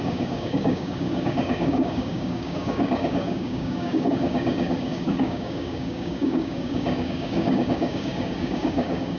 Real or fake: fake